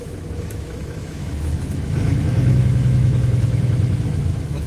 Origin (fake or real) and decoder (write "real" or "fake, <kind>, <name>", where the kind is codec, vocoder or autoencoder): fake, autoencoder, DAC-VAE